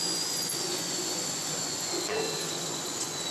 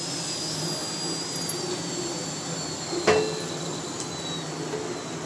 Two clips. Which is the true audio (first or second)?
second